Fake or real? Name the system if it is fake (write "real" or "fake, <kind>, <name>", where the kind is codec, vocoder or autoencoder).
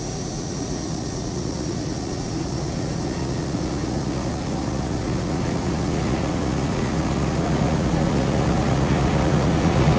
fake, vocoder, Vocos